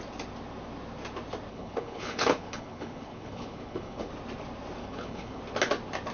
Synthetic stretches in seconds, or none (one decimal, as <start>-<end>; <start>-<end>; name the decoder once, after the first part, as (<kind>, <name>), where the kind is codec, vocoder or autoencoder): 1.5-4.1 (codec, HILCodec); 4.8-5.4